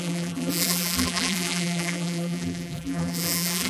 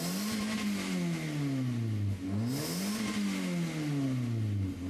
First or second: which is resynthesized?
first